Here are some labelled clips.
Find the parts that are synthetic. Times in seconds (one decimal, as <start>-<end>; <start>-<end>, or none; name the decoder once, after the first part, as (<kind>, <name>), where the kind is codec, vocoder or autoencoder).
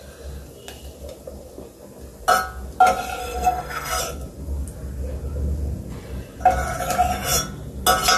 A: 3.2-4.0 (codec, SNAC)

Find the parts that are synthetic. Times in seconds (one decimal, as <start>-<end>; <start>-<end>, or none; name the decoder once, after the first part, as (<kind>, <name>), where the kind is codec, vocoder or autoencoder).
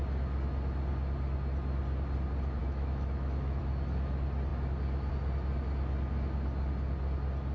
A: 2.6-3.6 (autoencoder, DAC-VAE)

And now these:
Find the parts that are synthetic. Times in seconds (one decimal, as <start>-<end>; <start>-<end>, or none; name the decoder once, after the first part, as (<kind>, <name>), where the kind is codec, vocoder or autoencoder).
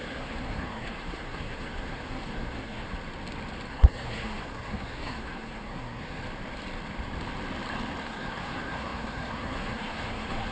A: 0.0-2.9 (codec, SNAC); 3.7-6.2; 8.0-10.5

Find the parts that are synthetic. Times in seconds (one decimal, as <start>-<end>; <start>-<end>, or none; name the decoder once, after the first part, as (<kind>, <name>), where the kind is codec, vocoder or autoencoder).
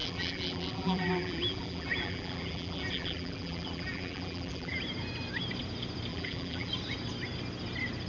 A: 0.0-4.8 (vocoder, BigVGAN v2); 6.1-6.7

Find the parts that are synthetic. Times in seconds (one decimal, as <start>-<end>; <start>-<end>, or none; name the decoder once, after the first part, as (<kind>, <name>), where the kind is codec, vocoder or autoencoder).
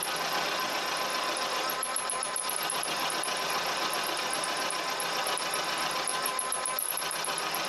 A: none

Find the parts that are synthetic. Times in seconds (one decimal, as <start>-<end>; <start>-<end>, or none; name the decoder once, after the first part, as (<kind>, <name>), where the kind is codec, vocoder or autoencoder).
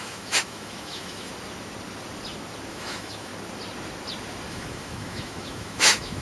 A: 0.0-1.3 (autoencoder, DAC-VAE); 2.7-3.3; 4.5-6.2